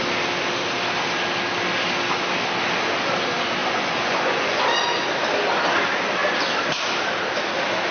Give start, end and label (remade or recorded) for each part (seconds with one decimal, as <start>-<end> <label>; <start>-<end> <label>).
0.0-3.6 recorded; 3.6-4.6 remade; 4.6-7.9 recorded